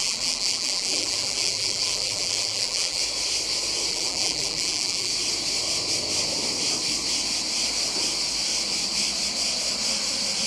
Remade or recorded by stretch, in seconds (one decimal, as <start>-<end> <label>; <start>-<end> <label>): 0.0-3.0 remade; 3.0-3.9 recorded; 3.9-5.1 remade; 5.1-10.5 recorded

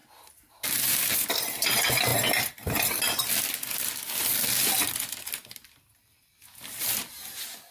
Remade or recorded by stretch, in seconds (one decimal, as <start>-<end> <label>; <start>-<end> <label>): 0.0-7.7 recorded

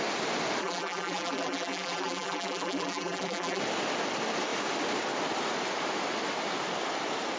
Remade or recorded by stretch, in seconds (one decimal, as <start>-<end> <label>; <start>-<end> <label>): 0.0-0.6 recorded; 0.6-3.6 remade; 3.6-7.4 recorded

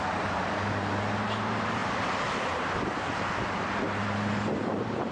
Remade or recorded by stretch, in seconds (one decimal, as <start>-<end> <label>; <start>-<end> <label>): 0.0-2.9 remade; 2.9-4.0 recorded; 4.0-5.1 remade

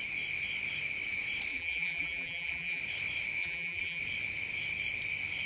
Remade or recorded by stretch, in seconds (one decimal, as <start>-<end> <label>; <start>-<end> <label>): 0.0-1.5 recorded; 1.5-2.8 remade; 2.8-3.4 recorded; 3.4-4.0 remade; 4.0-5.5 recorded

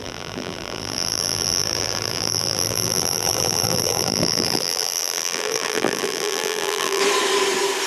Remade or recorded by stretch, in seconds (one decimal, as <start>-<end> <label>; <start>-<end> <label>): 0.0-7.0 remade; 7.0-7.9 recorded

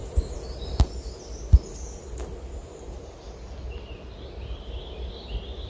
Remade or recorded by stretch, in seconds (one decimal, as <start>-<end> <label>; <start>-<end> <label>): 0.0-0.8 remade; 0.8-2.6 recorded; 2.6-3.2 remade; 3.2-5.7 recorded

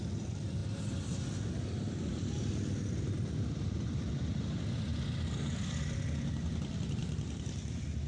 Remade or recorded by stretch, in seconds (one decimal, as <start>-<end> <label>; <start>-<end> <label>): 0.0-0.6 remade; 0.6-2.9 recorded; 2.9-8.1 remade